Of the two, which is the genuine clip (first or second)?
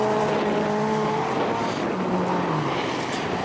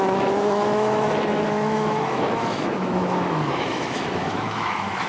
first